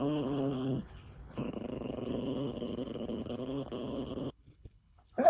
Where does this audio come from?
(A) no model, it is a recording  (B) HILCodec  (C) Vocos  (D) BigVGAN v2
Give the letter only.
B